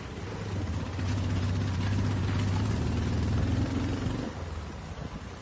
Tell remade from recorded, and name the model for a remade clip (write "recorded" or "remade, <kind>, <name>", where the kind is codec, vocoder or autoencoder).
recorded